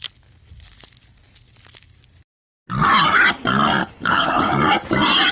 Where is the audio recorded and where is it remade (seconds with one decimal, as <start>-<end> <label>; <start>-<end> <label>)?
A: 0.0-3.8 recorded; 3.8-4.5 remade; 4.5-5.3 recorded